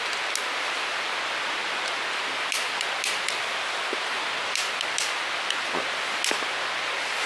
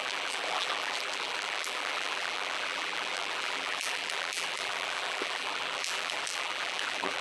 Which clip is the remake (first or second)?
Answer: second